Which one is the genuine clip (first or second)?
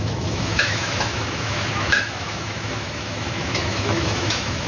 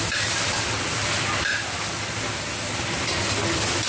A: second